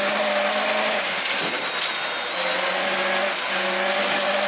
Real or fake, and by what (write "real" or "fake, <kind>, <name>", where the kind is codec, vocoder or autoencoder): real